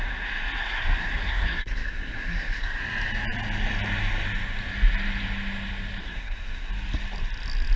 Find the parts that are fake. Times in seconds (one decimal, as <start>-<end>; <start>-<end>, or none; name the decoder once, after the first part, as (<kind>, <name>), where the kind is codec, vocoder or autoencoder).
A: 0.6-2.8 (codec, SNAC); 6.0-6.7